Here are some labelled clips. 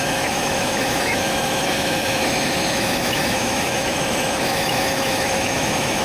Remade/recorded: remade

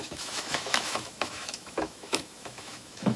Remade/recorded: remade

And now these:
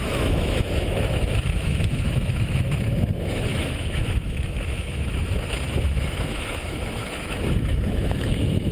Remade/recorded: remade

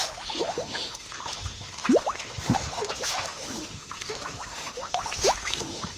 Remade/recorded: remade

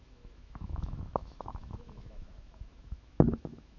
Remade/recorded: remade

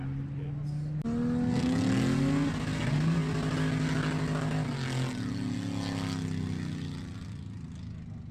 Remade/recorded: recorded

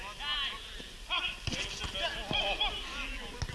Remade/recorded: recorded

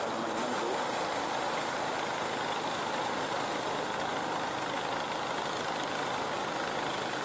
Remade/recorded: recorded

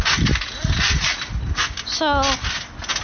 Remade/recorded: recorded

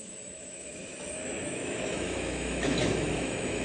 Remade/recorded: remade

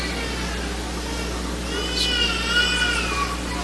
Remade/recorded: recorded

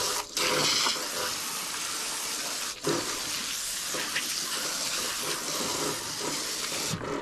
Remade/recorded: recorded